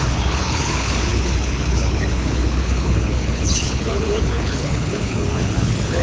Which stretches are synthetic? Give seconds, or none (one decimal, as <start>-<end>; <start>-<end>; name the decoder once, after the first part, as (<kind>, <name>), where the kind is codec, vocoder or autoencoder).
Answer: 0.0-6.0 (codec, HILCodec)